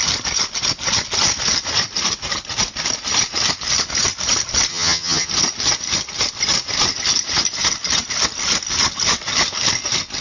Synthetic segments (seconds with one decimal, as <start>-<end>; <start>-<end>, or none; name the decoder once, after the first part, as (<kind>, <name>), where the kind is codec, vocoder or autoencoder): 4.7-5.3 (vocoder, HiFi-GAN)